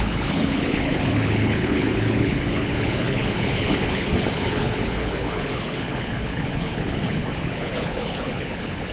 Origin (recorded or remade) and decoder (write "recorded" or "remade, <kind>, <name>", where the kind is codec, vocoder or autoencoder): remade, codec, HILCodec